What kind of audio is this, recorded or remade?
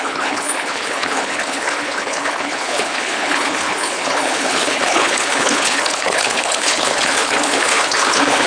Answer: remade